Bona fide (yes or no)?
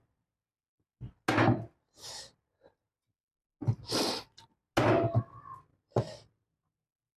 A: yes